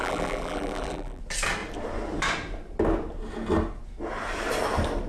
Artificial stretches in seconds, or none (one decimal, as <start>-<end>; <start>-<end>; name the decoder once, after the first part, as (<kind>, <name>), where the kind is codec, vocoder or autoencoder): 0.0-1.2 (vocoder, BigVGAN v2)